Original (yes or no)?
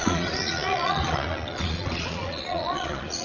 no